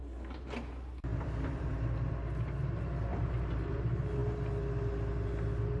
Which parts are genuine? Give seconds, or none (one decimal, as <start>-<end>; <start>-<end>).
0.0-1.1; 2.1-3.1; 3.8-5.8